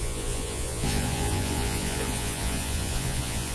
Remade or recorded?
remade